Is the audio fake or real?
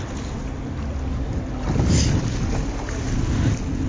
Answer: real